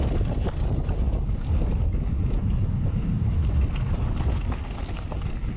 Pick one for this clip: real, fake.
real